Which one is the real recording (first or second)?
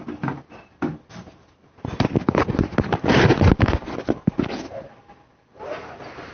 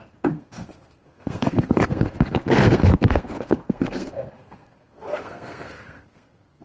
first